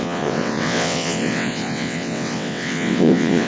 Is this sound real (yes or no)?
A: no